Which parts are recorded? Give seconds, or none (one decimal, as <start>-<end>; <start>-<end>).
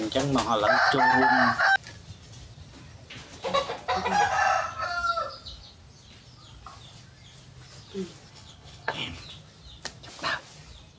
0.0-8.3; 9.2-11.0